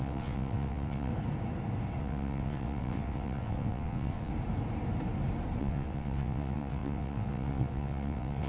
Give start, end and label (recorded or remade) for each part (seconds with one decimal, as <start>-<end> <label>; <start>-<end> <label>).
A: 0.0-1.1 remade; 1.1-2.0 recorded; 2.0-4.3 remade; 4.3-5.6 recorded; 5.6-8.5 remade